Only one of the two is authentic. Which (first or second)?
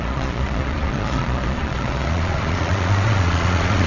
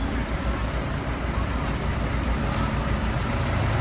second